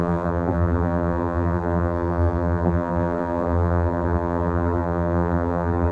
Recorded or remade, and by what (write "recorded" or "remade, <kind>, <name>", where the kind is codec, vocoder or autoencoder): remade, vocoder, BigVGAN v2